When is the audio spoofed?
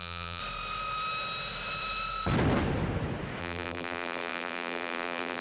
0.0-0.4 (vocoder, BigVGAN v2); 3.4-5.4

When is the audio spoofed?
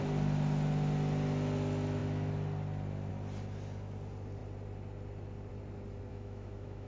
6.1-6.9 (autoencoder, DAC-VAE)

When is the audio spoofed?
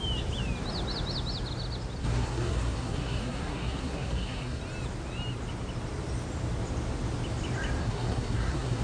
2.0-4.6 (codec, SNAC); 7.8-8.8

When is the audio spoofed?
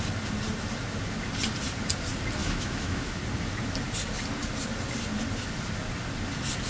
2.4-3.2 (autoencoder, DAC-VAE)